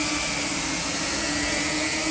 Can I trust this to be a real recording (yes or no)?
yes